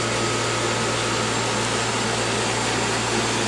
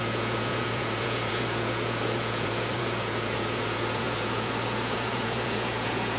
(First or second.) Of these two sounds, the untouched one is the first